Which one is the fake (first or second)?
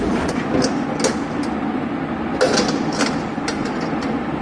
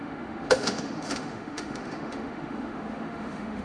second